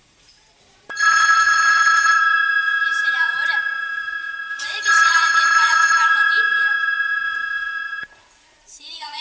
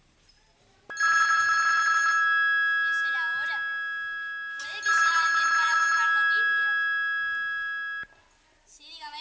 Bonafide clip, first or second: second